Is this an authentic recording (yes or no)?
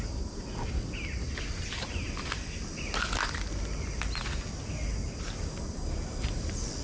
yes